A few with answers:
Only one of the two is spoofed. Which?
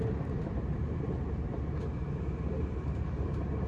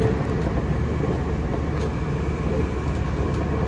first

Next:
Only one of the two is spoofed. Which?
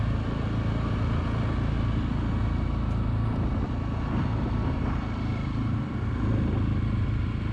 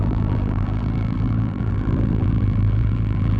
second